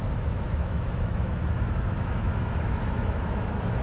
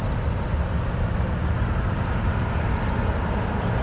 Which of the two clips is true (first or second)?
second